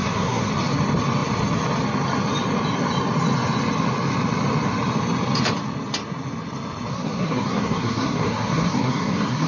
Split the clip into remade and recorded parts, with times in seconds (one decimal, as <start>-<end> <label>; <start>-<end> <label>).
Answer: 0.0-0.5 remade; 0.5-6.9 recorded; 6.9-9.5 remade